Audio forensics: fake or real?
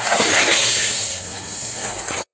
fake